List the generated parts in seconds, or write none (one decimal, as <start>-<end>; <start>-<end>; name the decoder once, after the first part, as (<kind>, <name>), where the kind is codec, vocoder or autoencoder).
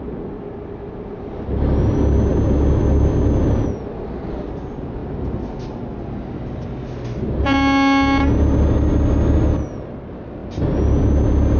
none